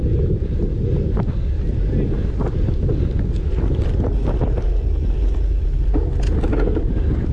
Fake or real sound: real